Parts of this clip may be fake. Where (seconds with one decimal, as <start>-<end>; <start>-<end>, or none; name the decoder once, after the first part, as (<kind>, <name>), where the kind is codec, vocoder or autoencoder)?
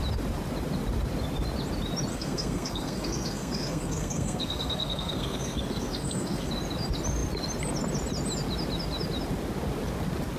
2.1-6.5 (codec, SNAC)